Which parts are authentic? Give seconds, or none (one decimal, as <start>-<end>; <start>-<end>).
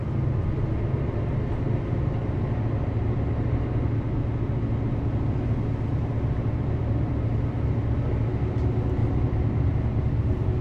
0.0-9.0; 9.8-10.6